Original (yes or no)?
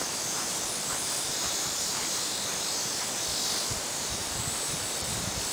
no